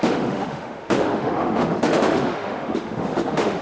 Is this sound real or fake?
fake